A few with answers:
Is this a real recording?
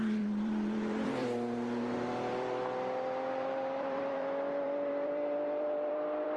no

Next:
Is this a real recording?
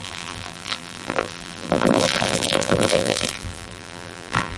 no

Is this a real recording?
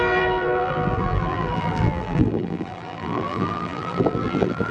no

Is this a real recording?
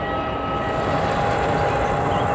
yes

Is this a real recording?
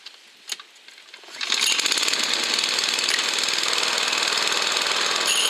yes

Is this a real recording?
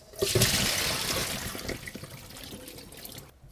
yes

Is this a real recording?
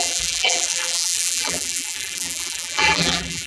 no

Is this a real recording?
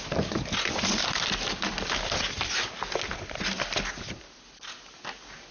yes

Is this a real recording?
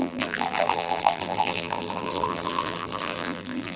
no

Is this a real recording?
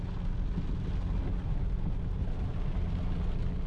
yes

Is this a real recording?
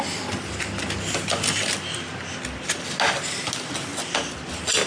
yes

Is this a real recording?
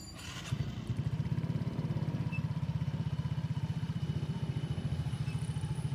no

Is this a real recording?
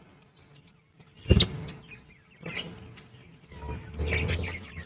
yes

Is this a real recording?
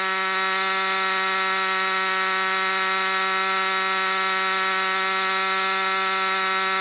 yes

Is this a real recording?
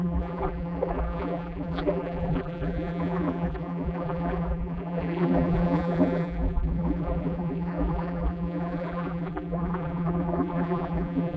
no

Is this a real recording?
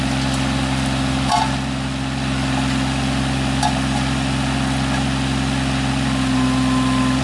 yes